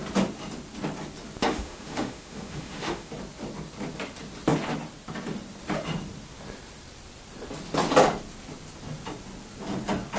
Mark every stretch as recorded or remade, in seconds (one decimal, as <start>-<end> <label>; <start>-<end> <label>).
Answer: 0.0-1.4 recorded; 1.4-3.1 remade; 3.1-10.2 recorded